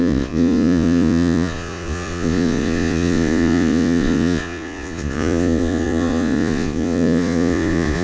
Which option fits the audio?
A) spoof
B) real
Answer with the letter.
A